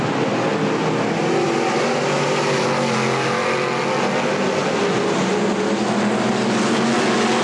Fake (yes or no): no